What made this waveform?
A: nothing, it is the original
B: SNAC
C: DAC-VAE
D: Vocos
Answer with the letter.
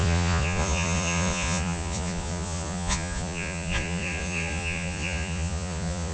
D